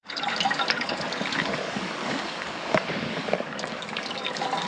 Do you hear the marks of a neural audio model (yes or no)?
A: yes